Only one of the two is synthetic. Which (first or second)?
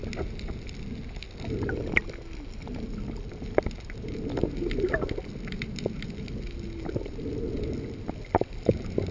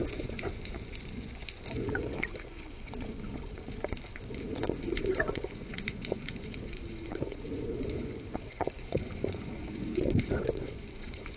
second